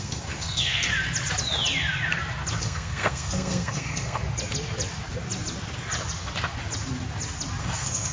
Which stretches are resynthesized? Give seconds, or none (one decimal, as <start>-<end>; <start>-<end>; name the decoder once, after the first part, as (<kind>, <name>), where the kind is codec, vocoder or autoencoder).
0.0-0.9 (codec, SNAC); 2.6-4.2; 7.6-8.1